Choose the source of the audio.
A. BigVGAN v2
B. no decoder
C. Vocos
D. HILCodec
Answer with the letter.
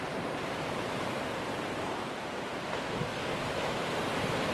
A